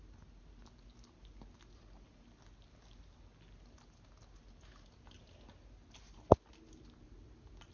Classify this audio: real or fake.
real